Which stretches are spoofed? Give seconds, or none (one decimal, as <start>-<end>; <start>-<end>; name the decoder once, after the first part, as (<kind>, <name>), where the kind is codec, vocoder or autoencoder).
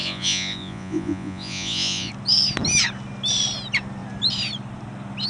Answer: 0.0-2.1 (vocoder, Vocos)